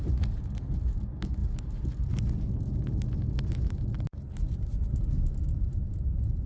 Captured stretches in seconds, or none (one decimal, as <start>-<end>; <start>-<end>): 0.0-6.5